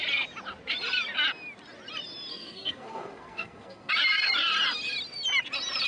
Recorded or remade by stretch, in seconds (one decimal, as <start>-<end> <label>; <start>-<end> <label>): 0.0-2.3 recorded; 2.3-3.9 remade; 3.9-5.9 recorded